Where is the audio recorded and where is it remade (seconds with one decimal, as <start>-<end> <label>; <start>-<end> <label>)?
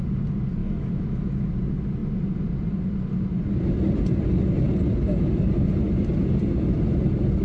0.0-0.6 recorded; 0.6-1.3 remade; 1.3-7.4 recorded